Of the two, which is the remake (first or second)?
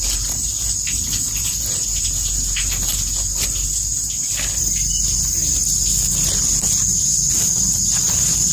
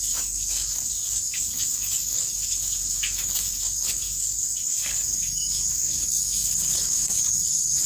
second